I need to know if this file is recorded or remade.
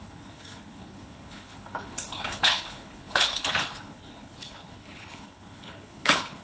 remade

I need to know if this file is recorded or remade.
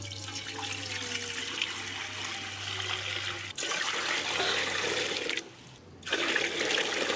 recorded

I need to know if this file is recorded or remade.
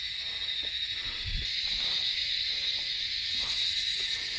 recorded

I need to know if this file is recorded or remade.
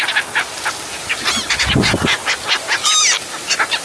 recorded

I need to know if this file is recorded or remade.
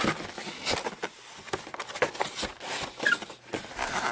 recorded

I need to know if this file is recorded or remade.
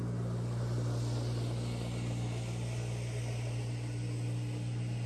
recorded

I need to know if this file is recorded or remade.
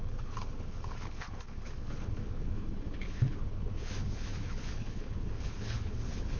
remade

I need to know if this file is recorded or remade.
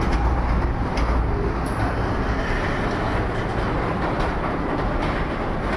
recorded